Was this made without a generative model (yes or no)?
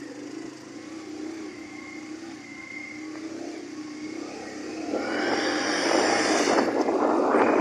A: no